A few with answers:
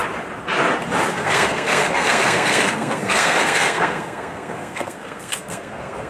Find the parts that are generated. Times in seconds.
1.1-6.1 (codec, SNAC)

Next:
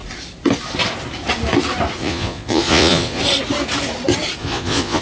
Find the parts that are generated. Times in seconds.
2.0-3.2 (vocoder, Vocos); 4.4-5.0

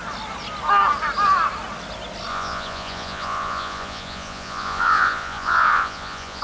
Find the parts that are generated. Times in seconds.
2.3-6.4 (vocoder, Vocos)

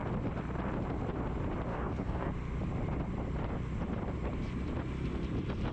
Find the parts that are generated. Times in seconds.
1.7-2.3 (codec, DAC)

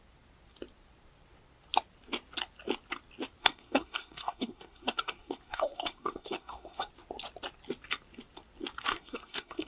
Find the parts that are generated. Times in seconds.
3.4-6.9 (codec, SNAC); 8.9-9.7

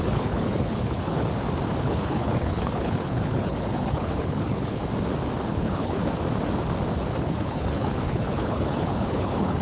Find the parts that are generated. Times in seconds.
0.0-1.3 (codec, HILCodec); 1.8-4.8; 5.5-6.0; 7.2-9.6

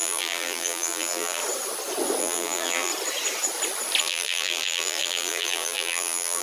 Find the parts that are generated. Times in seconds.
0.0-1.4 (vocoder, BigVGAN v2); 2.2-2.9; 4.0-6.4

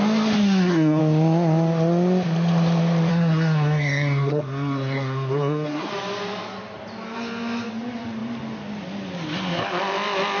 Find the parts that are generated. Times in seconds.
0.4-1.0 (codec, SNAC); 3.1-5.9